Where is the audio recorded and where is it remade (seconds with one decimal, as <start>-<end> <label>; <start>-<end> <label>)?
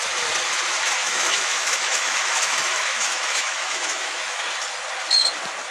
0.0-1.0 recorded; 1.0-4.4 remade; 4.4-5.7 recorded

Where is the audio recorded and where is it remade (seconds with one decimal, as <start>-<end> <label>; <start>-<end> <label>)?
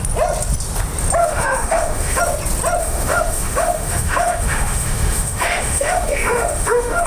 0.0-1.2 recorded; 1.2-2.2 remade; 2.2-2.8 recorded; 2.8-7.1 remade